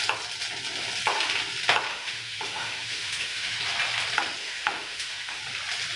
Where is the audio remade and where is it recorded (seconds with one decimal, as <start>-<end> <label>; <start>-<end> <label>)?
0.0-1.9 recorded; 1.9-3.6 remade; 3.6-4.4 recorded; 4.4-5.4 remade; 5.4-6.0 recorded